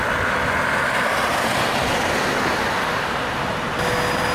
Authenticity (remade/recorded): recorded